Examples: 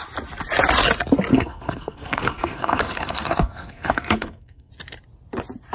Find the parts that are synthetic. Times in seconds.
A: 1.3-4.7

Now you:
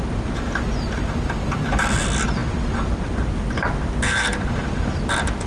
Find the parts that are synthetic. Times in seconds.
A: none

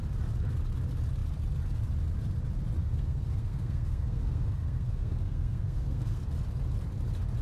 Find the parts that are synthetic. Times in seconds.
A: 2.8-6.2